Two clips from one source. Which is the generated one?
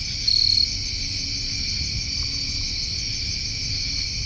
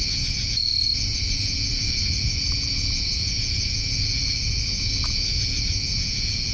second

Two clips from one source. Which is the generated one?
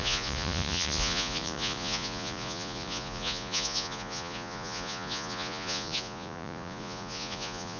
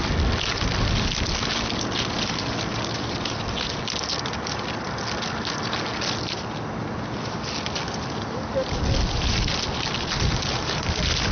first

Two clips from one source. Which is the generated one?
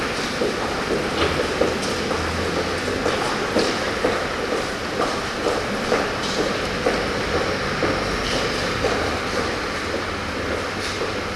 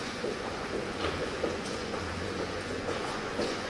second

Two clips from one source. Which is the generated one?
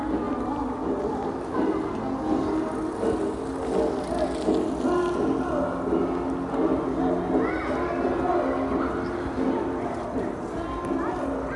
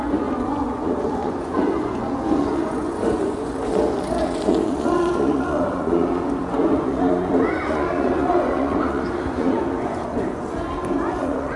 second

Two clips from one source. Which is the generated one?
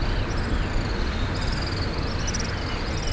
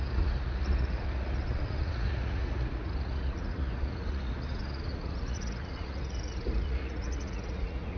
second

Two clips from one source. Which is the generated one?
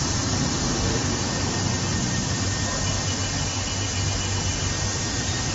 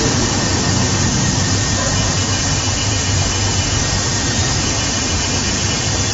second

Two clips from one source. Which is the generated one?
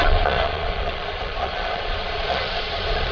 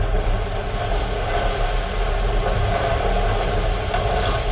first